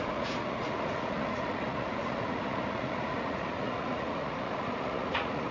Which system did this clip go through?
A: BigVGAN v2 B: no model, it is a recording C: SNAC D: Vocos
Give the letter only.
D